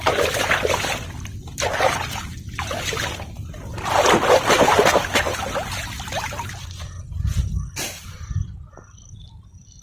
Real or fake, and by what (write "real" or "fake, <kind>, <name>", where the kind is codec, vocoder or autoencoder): real